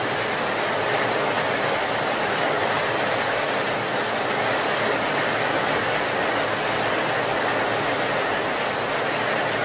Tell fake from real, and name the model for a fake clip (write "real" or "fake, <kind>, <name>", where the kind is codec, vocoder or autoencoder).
real